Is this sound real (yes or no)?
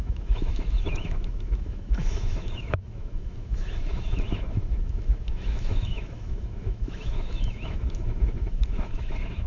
no